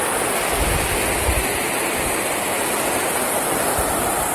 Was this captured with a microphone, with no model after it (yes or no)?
yes